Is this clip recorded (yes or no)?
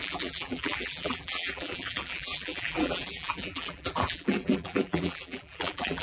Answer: no